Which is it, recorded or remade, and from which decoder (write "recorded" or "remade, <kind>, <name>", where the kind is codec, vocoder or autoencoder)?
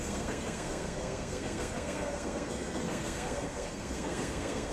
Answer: remade, codec, SNAC